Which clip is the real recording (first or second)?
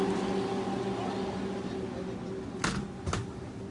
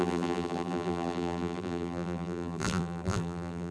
first